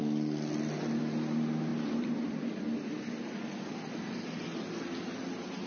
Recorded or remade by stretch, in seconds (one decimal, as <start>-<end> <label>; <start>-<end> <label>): 0.0-5.7 recorded